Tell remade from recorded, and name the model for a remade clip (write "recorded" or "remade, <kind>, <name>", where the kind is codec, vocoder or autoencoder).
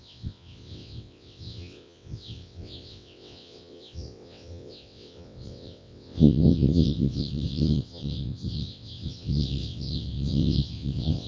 remade, vocoder, WaveNeXt